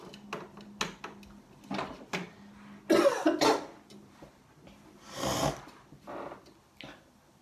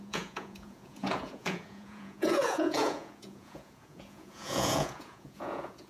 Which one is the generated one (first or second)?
second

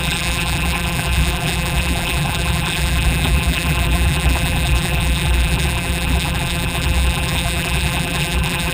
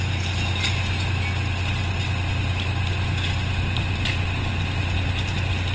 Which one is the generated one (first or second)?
first